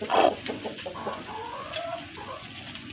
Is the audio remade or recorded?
remade